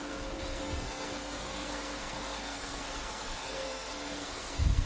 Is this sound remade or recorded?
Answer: remade